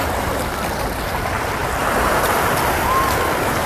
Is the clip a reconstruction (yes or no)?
no